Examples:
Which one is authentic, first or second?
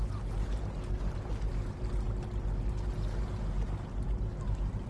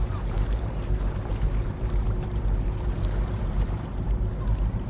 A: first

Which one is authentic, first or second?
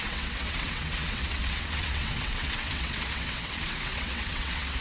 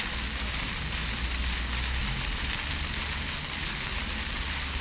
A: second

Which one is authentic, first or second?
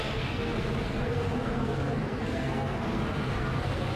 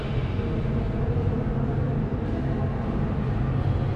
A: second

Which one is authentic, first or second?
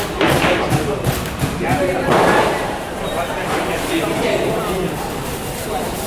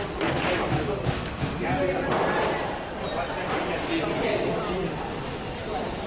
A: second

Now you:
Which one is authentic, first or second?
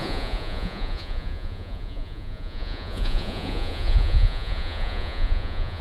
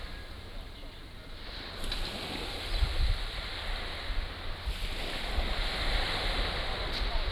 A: second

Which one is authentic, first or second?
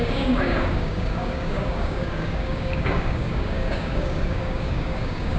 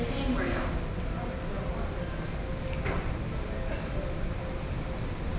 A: second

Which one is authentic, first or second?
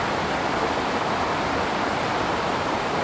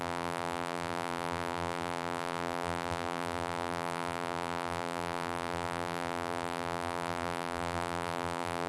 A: first